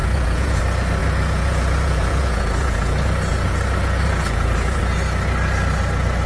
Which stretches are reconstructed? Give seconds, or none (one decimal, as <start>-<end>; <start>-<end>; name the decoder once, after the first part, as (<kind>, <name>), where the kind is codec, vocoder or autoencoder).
0.0-0.6 (vocoder, Vocos); 1.0-4.8